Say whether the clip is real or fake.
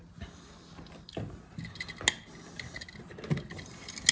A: real